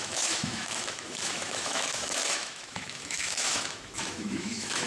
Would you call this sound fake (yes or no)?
yes